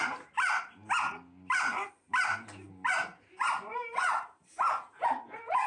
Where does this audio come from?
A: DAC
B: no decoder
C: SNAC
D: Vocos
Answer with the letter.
B